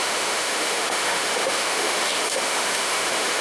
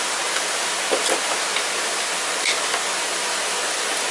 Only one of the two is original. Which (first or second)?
second